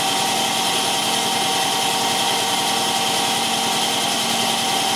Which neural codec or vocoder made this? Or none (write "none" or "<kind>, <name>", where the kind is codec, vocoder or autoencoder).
none